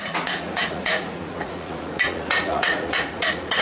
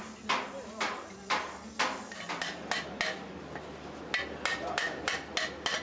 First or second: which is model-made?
first